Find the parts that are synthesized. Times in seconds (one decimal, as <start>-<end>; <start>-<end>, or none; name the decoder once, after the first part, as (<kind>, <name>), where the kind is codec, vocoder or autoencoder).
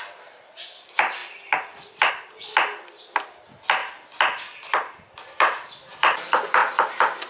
none